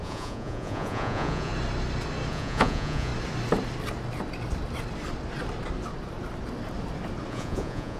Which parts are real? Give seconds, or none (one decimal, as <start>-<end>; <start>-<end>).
1.5-2.3; 3.1-7.3